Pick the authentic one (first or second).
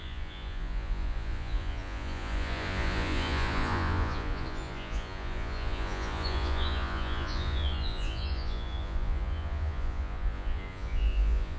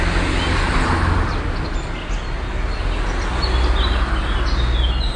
second